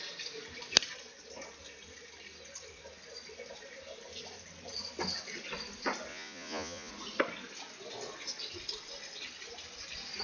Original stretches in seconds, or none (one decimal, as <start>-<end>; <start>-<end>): 0.0-6.1; 6.9-10.2